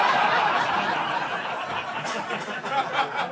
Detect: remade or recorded recorded